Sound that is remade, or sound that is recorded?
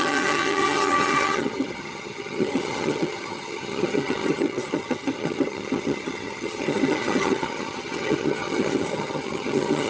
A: remade